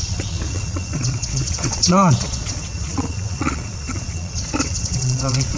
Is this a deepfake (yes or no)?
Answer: yes